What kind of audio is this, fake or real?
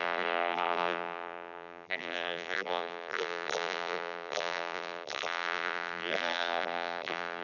fake